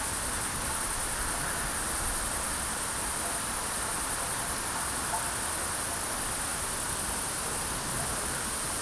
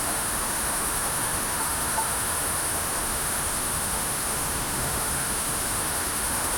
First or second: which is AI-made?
second